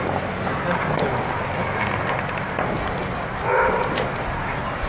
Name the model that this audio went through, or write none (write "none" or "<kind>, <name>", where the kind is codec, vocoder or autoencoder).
none